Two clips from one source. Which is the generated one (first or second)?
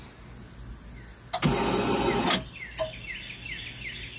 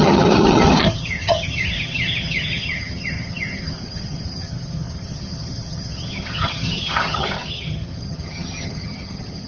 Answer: second